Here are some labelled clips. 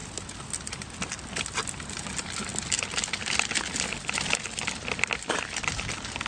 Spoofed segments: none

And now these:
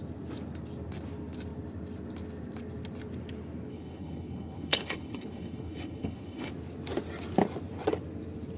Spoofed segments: 3.7-6.5 (codec, HILCodec)

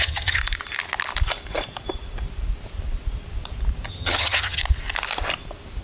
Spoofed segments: 0.0-0.4 (vocoder, HiFi-GAN); 3.9-4.6

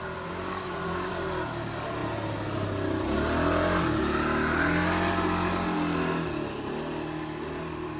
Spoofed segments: none

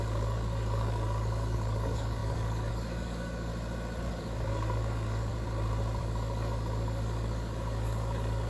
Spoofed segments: 0.0-3.5 (codec, DAC); 4.0-5.3; 6.0-8.5

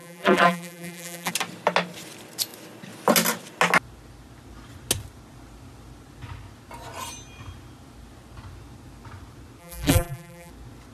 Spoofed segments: 0.0-1.3 (vocoder, BigVGAN v2); 9.6-10.5

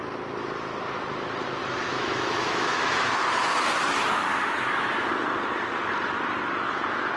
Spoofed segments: 1.6-3.2 (autoencoder, DAC-VAE); 4.2-5.1